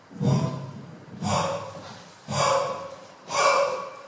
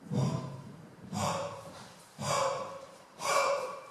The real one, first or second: first